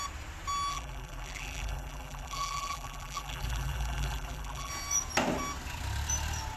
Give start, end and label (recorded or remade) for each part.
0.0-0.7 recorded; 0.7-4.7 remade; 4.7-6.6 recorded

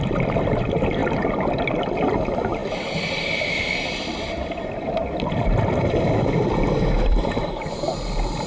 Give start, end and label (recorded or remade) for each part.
0.0-8.5 recorded

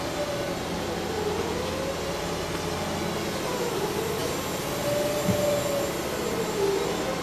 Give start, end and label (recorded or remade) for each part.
0.0-7.2 recorded

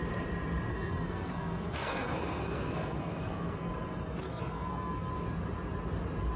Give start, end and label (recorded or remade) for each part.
0.0-0.7 recorded; 0.7-3.7 remade; 3.7-4.2 recorded; 4.2-5.1 remade; 5.1-6.4 recorded

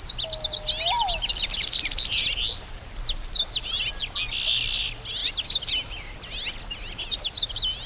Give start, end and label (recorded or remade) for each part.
0.0-7.9 recorded

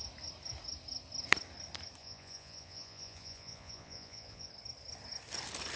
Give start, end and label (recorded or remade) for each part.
0.0-2.0 recorded; 2.0-4.5 remade; 4.5-5.8 recorded

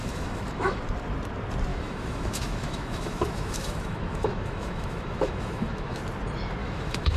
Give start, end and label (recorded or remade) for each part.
0.0-0.8 remade; 0.8-1.7 recorded; 1.7-6.0 remade; 6.0-6.6 recorded; 6.6-7.2 remade